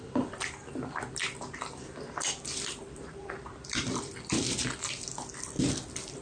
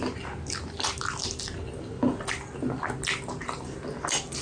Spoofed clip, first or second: first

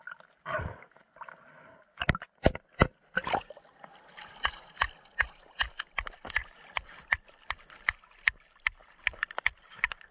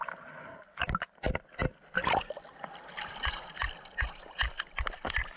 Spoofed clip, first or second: second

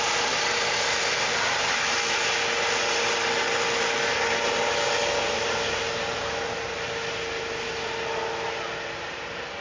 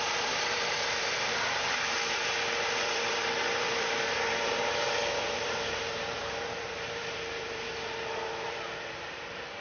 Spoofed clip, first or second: second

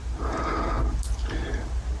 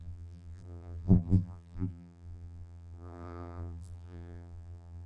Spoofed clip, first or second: second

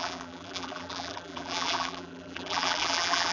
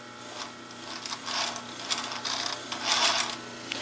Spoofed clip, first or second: first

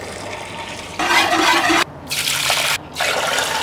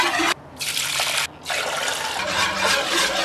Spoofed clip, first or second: first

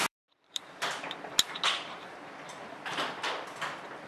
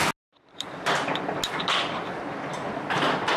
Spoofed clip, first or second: first